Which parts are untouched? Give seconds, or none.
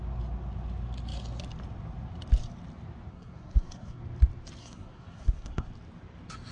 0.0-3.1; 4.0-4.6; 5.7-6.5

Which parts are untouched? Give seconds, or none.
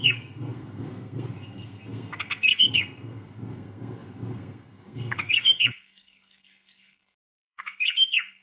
none